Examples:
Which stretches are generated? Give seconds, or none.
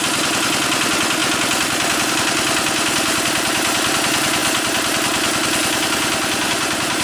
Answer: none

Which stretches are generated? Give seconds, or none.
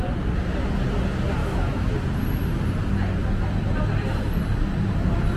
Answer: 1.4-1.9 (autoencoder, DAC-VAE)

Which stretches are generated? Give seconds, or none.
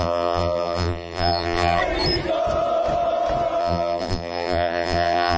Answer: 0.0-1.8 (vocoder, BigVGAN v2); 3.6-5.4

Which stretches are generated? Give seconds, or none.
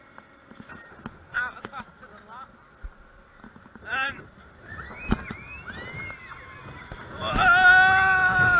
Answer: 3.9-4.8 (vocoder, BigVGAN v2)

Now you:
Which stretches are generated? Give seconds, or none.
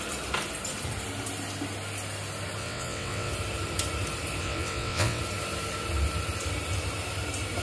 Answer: 2.6-3.3 (vocoder, WaveNeXt); 4.4-5.2